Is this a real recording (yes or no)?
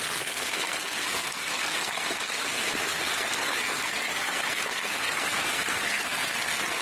no